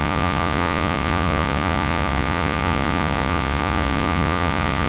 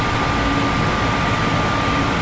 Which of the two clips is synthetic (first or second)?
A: first